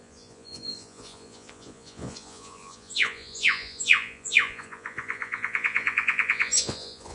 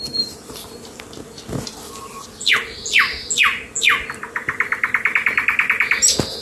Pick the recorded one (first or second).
second